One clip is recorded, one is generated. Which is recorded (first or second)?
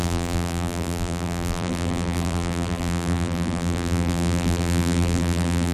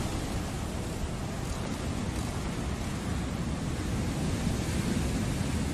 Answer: second